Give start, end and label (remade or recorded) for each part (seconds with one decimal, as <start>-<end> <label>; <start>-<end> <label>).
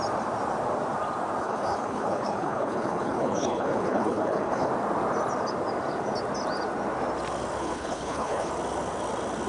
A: 0.0-1.4 recorded; 1.4-4.7 remade; 4.7-7.6 recorded; 7.6-8.5 remade; 8.5-9.5 recorded